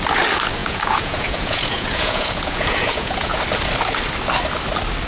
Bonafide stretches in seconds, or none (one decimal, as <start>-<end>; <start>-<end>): 0.0-0.6; 3.4-5.1

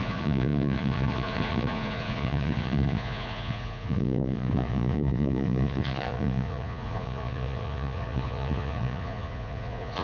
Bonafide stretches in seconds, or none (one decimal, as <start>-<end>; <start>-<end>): none

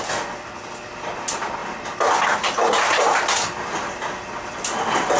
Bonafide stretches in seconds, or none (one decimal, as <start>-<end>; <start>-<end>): 0.0-5.2

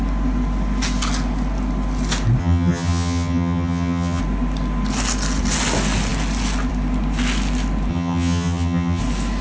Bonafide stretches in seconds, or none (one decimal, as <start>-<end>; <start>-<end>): 0.0-2.4; 4.2-7.9; 9.0-9.4